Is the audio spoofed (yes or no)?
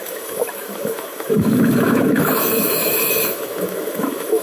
yes